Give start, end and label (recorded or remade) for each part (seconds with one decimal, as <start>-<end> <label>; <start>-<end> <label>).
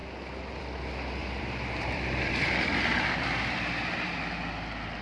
0.0-1.2 recorded; 1.2-4.2 remade; 4.2-5.0 recorded